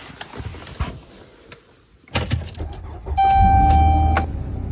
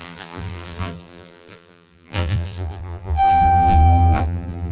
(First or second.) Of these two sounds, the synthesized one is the second